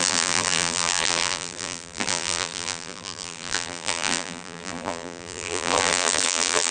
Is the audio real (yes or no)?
no